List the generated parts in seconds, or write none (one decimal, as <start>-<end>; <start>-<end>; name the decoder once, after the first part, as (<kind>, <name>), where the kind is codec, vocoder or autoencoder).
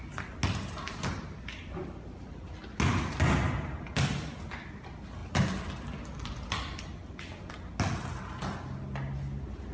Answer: none